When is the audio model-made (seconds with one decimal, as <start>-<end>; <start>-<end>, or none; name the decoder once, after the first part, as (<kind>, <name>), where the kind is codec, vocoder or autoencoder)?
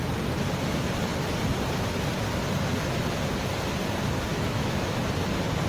4.3-5.0 (autoencoder, DAC-VAE)